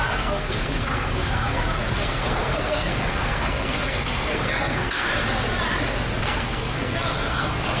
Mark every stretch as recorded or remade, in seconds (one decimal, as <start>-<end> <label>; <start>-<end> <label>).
0.0-5.1 remade; 5.1-6.2 recorded; 6.2-7.8 remade